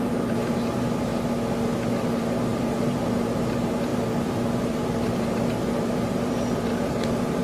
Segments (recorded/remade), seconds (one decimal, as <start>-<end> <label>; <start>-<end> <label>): 0.0-1.1 remade; 1.1-2.0 recorded; 2.0-7.4 remade